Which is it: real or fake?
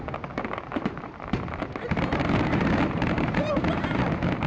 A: fake